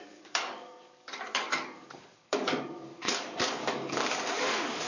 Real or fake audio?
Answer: fake